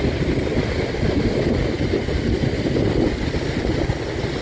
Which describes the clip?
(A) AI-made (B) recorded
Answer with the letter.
B